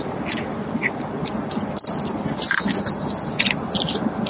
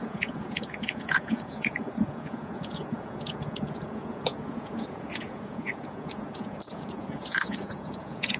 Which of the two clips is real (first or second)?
first